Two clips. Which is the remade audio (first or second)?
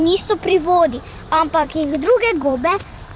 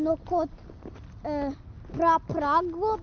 first